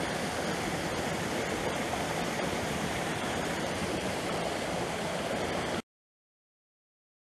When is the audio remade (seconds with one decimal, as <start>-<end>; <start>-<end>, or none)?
2.5-4.4